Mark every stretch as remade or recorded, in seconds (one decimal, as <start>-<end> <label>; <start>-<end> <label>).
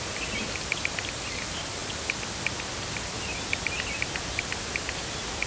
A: 0.0-5.5 recorded